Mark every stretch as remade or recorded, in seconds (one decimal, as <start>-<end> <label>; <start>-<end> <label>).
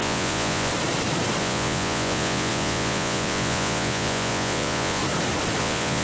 0.0-0.7 remade; 0.7-1.4 recorded; 1.4-5.0 remade; 5.0-5.6 recorded; 5.6-6.0 remade